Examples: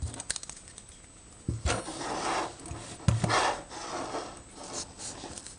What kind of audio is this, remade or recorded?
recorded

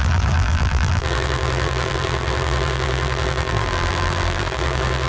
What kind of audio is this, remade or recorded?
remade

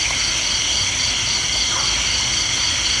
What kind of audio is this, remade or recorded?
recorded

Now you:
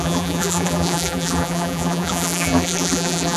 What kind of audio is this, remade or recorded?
remade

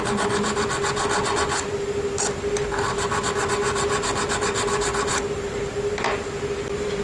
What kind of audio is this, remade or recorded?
recorded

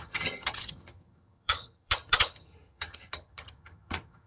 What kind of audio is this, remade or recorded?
remade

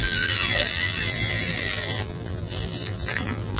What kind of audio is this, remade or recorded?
remade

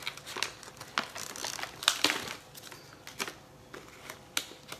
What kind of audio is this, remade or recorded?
recorded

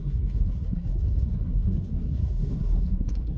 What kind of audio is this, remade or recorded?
remade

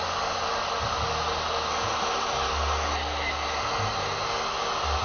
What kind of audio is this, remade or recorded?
recorded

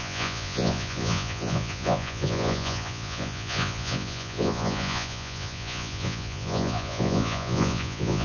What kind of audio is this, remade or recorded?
remade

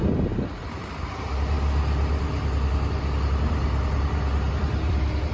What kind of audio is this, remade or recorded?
recorded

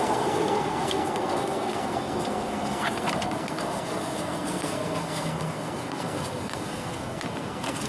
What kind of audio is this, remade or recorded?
remade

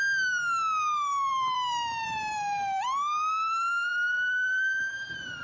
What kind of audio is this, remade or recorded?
remade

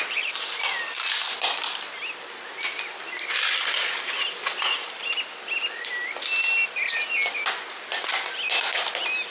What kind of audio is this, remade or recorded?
recorded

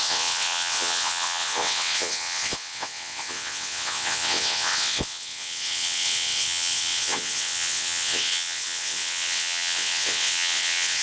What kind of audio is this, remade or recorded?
remade